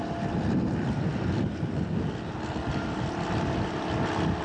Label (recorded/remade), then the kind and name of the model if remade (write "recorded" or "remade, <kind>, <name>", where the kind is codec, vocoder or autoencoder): recorded